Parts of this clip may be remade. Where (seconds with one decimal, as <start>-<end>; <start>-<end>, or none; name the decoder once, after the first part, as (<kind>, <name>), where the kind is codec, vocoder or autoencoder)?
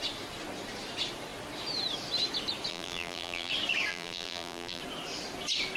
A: 2.7-3.5 (vocoder, BigVGAN v2); 3.9-4.8